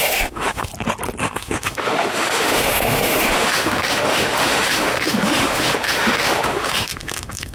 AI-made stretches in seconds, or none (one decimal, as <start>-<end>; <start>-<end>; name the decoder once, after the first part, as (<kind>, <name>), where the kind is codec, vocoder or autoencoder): 0.0-0.7 (autoencoder, DAC-VAE); 1.2-7.5